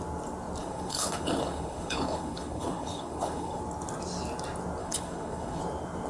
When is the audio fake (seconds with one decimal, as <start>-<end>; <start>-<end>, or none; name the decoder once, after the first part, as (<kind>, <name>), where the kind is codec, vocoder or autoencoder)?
0.6-3.6 (codec, HILCodec); 4.8-5.6